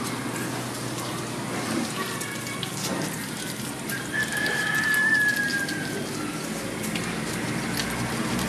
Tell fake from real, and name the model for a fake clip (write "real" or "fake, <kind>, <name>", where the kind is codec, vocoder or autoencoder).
real